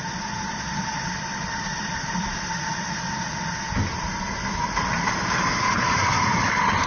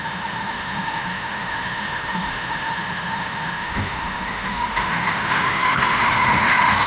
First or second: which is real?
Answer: first